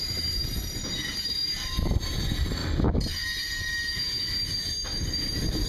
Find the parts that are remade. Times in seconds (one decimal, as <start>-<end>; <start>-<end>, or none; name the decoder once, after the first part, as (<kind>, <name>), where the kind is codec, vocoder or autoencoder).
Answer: 0.0-0.4 (vocoder, BigVGAN v2); 2.0-2.6; 4.7-5.7